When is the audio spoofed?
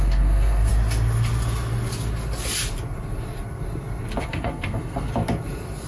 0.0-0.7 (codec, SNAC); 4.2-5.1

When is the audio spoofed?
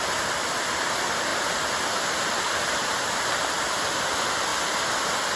none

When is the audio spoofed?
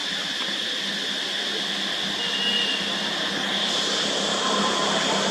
none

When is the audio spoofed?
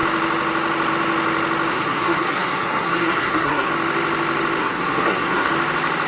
1.7-3.7 (codec, SNAC); 4.6-5.5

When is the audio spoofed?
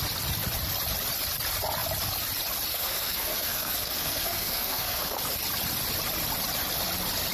2.7-5.2 (codec, SNAC)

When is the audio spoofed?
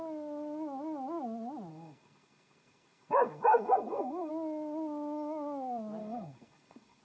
1.7-4.3 (codec, SNAC); 6.0-7.0